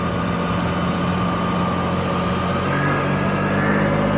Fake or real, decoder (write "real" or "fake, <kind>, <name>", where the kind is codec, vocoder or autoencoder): real